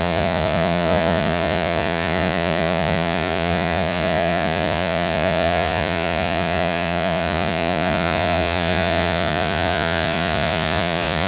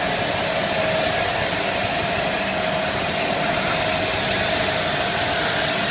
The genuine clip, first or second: second